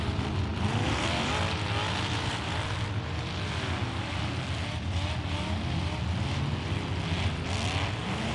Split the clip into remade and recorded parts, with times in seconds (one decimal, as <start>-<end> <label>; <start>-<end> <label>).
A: 0.0-0.5 recorded; 0.5-1.3 remade; 1.3-8.3 recorded